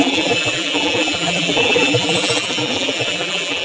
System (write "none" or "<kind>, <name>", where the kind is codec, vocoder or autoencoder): vocoder, BigVGAN v2